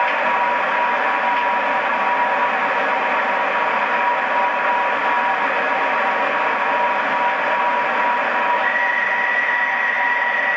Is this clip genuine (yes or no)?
yes